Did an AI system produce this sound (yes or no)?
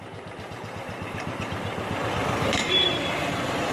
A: yes